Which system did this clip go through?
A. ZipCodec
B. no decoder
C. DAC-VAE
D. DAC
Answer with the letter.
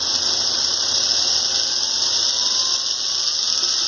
B